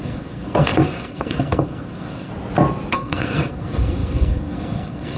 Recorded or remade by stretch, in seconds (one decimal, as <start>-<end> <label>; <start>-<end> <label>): 0.0-2.3 remade; 2.3-2.9 recorded; 2.9-5.2 remade

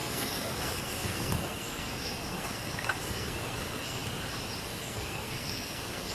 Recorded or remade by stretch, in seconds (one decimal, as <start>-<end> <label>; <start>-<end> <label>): 0.0-4.0 remade; 4.0-4.6 recorded; 4.6-6.1 remade

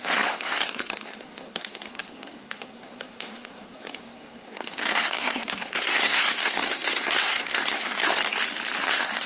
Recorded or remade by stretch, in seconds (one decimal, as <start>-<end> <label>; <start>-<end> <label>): 0.0-8.1 remade; 8.1-8.8 recorded; 8.8-9.3 remade

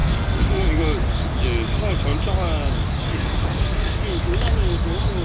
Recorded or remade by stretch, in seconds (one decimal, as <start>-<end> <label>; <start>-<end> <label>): 0.0-0.6 remade; 0.6-3.2 recorded; 3.2-4.0 remade; 4.0-5.2 recorded

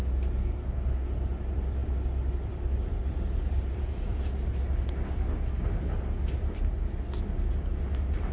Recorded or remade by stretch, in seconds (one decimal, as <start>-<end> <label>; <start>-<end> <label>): 0.0-0.4 recorded; 0.4-1.1 remade; 1.1-8.3 recorded

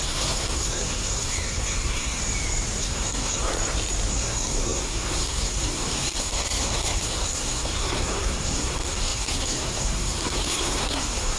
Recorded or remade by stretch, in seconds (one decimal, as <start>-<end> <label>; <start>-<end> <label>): 0.0-2.2 remade; 2.2-2.8 recorded; 2.8-3.5 remade; 3.5-4.1 recorded; 4.1-11.4 remade